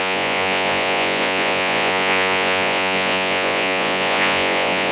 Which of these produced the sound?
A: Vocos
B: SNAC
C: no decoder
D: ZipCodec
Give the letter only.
A